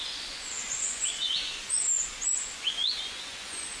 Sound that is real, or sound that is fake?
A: fake